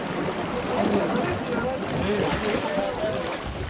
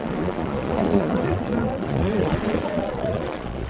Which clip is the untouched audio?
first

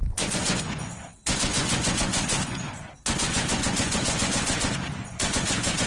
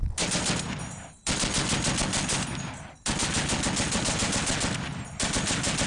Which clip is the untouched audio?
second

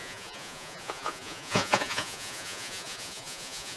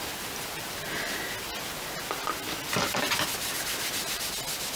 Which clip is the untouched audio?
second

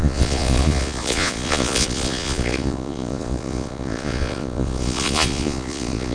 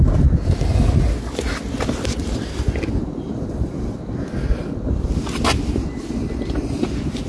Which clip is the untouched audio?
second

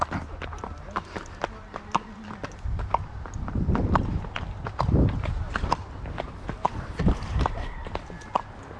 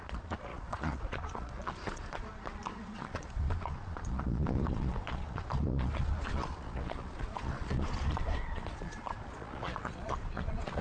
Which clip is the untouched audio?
first